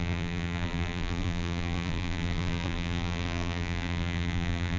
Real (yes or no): no